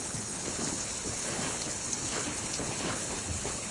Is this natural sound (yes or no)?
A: no